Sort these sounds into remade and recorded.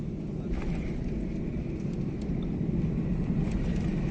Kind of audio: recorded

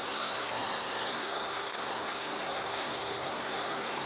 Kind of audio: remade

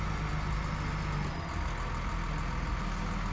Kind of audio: recorded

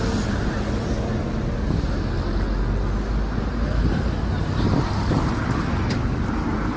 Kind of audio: recorded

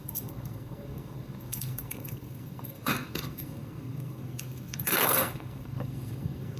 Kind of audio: remade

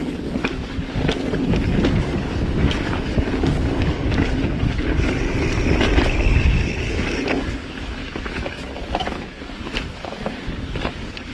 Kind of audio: remade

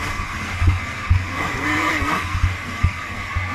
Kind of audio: remade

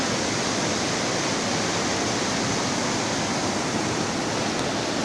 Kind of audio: recorded